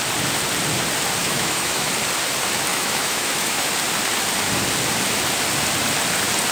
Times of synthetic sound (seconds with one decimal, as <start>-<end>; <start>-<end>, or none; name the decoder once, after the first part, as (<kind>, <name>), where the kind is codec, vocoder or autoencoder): 1.2-1.9 (autoencoder, DAC-VAE); 2.7-3.7